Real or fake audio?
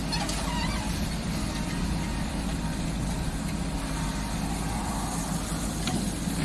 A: real